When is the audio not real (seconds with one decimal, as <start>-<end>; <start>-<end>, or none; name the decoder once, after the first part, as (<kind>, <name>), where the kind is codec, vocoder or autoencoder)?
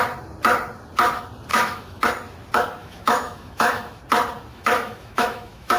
1.5-2.0 (autoencoder, DAC-VAE); 2.8-4.0; 4.5-5.8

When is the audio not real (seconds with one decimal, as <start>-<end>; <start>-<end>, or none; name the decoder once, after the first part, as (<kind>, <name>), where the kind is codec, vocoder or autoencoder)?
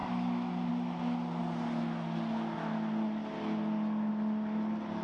none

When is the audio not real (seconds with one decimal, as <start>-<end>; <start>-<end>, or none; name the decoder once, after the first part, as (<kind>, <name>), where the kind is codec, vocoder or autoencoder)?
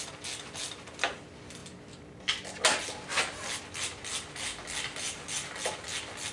none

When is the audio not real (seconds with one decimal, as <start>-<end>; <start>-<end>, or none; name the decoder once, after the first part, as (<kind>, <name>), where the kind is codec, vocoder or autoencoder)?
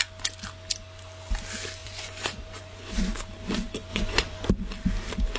1.8-2.9 (vocoder, Vocos); 3.9-4.5